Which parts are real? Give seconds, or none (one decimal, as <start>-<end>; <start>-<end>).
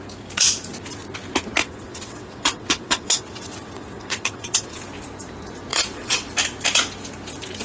0.0-1.6; 4.8-5.7; 6.3-7.6